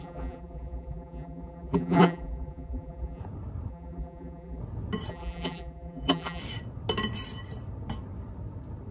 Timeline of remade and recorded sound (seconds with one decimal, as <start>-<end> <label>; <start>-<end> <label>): 0.0-3.2 remade; 3.2-3.7 recorded; 3.7-4.6 remade; 4.6-5.1 recorded; 5.1-6.4 remade; 6.4-8.9 recorded